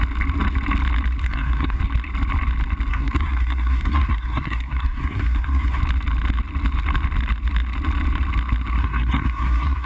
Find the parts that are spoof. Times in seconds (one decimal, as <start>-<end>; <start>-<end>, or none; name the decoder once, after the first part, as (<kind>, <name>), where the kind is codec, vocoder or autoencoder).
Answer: 1.2-1.8 (codec, SNAC); 2.9-5.8; 8.8-9.9